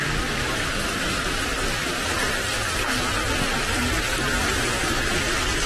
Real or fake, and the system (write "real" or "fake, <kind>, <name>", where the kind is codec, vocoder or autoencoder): real